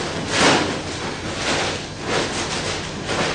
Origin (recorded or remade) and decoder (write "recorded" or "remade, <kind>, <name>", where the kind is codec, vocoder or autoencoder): recorded